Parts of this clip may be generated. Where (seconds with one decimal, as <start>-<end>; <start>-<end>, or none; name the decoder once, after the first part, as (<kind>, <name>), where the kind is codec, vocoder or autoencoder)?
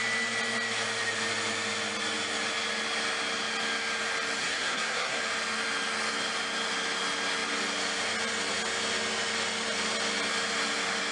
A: 4.4-5.2 (codec, SNAC)